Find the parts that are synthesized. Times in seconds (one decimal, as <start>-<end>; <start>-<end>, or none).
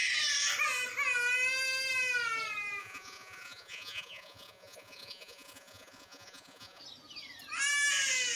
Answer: 2.8-6.8